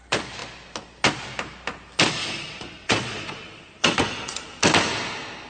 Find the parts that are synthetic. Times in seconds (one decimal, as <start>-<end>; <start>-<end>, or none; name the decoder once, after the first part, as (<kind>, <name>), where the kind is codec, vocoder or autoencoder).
2.2-4.6 (vocoder, Vocos)